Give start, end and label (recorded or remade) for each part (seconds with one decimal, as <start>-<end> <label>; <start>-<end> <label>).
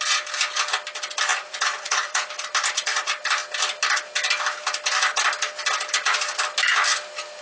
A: 0.0-1.3 recorded; 1.3-2.3 remade; 2.3-7.4 recorded